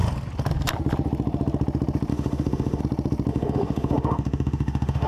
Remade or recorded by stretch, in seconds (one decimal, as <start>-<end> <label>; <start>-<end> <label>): 0.0-2.1 recorded; 2.1-2.8 remade; 2.8-3.3 recorded; 3.3-5.1 remade